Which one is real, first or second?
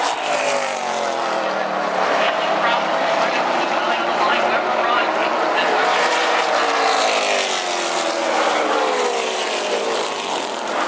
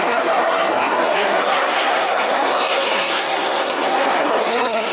first